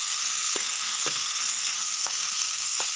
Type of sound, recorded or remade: remade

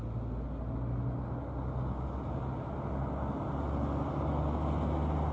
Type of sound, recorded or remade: recorded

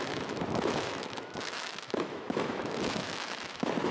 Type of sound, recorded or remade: remade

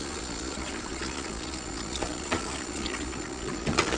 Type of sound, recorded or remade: remade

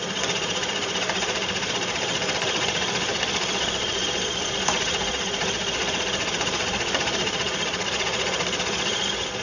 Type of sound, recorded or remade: remade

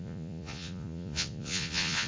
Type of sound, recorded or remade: remade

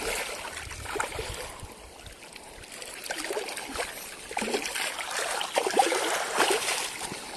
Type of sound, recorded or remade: recorded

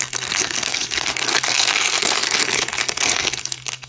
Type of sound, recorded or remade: remade